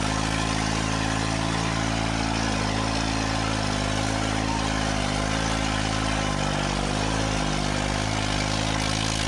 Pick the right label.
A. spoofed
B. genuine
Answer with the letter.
B